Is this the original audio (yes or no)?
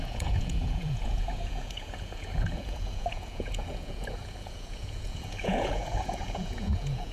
no